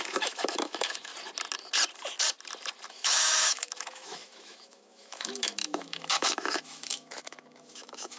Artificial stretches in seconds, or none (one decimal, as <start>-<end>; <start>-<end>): 0.0-1.1; 2.9-8.2

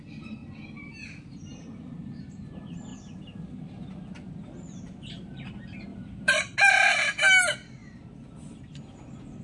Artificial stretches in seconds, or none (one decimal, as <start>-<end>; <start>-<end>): 5.9-6.4

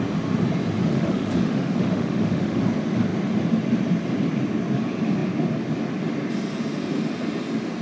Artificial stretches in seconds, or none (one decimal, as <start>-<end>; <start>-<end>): 0.9-2.6

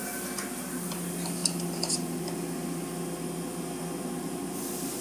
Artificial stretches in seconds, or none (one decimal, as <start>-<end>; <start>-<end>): none

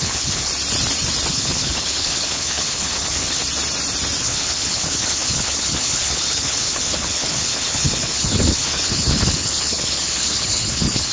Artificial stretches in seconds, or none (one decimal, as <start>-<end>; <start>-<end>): 0.0-0.5; 1.3-3.4; 4.2-11.1